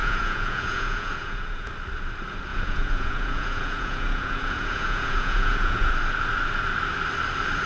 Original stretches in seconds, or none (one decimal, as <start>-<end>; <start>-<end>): 1.7-2.5; 5.9-7.7